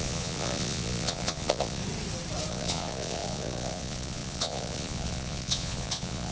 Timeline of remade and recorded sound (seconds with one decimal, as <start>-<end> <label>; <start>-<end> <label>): 0.0-1.8 remade; 1.8-2.5 recorded; 2.5-6.3 remade